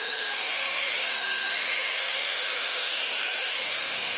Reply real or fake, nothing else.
fake